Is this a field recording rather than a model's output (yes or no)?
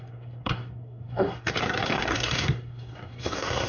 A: no